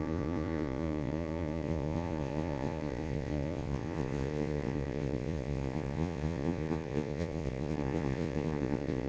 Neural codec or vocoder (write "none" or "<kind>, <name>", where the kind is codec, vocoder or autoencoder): vocoder, Vocos